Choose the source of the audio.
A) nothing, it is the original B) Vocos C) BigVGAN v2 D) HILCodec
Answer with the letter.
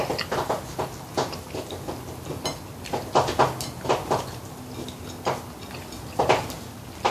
A